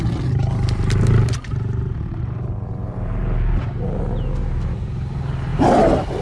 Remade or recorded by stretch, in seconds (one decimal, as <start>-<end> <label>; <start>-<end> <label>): 0.0-1.5 recorded; 1.5-3.2 remade; 3.2-5.5 recorded; 5.5-6.2 remade